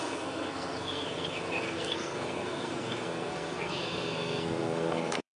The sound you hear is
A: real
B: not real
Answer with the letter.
B